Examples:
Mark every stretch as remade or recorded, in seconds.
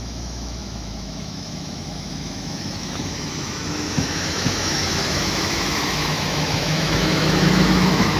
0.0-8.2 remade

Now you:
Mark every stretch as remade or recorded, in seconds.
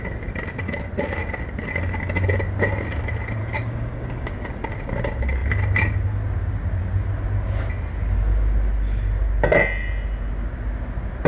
0.0-3.4 recorded; 3.4-4.5 remade; 4.5-11.3 recorded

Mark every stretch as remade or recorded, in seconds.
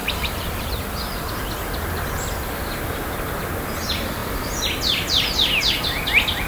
0.0-0.8 remade; 0.8-6.5 recorded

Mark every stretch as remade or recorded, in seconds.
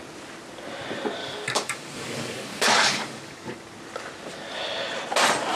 0.0-1.2 recorded; 1.2-3.5 remade; 3.5-5.6 recorded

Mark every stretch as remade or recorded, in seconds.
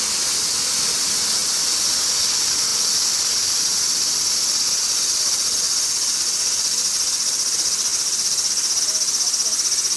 0.0-2.7 recorded; 2.7-6.9 remade; 6.9-7.9 recorded; 7.9-8.8 remade; 8.8-10.0 recorded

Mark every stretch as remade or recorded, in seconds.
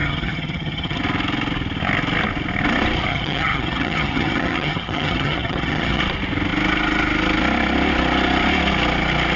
0.0-1.0 remade; 1.0-3.1 recorded; 3.1-6.0 remade; 6.0-9.4 recorded